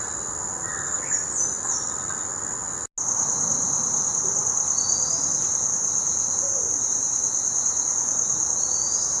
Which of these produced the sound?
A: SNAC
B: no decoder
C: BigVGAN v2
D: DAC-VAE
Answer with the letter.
B